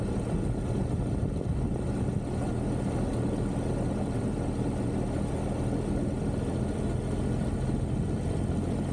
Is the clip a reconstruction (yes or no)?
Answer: no